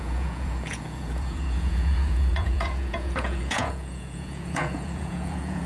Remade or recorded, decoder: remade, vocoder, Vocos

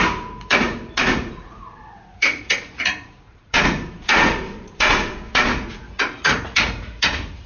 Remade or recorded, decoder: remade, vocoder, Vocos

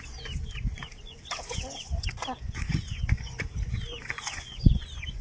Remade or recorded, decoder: remade, vocoder, Vocos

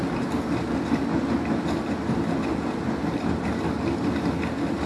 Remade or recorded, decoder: recorded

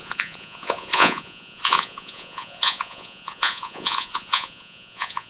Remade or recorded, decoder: remade, vocoder, Vocos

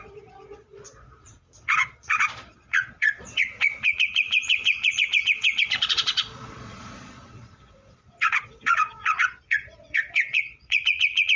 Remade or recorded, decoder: remade, vocoder, Vocos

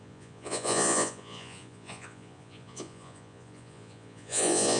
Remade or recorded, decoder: remade, vocoder, Vocos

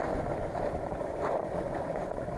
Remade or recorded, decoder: remade, vocoder, Vocos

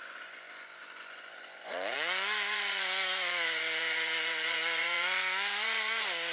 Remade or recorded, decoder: remade, vocoder, Vocos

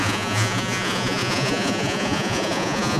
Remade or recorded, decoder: remade, vocoder, Vocos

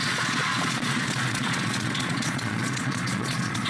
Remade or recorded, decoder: remade, vocoder, Vocos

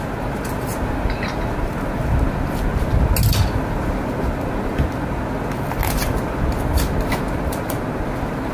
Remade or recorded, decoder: recorded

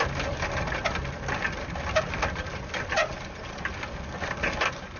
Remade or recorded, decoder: recorded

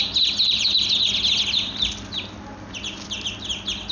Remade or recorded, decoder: recorded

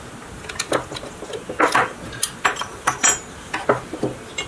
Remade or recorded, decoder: recorded